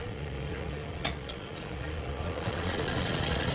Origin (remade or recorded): remade